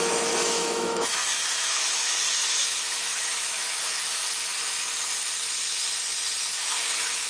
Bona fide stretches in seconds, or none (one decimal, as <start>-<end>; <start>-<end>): 4.2-6.5